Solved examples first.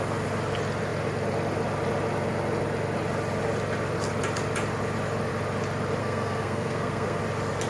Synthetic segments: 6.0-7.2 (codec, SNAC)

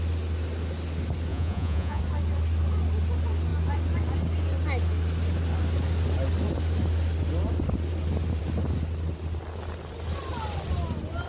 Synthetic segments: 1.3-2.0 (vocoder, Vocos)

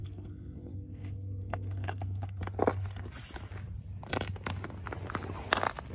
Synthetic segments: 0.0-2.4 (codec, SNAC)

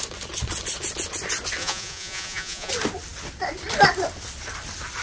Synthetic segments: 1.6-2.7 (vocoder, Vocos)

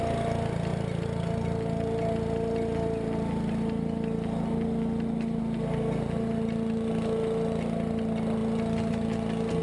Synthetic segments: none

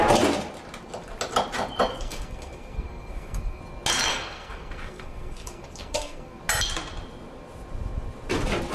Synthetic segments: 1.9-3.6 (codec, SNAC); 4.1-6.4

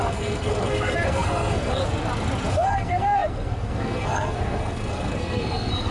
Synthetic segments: 0.0-1.8 (codec, SNAC); 2.5-5.9